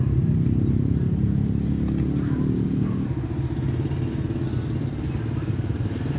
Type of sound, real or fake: real